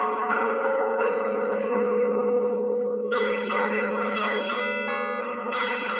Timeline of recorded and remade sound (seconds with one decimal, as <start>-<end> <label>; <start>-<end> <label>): 0.0-4.6 remade; 4.6-5.2 recorded; 5.2-6.0 remade